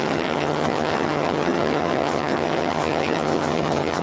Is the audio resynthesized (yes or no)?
yes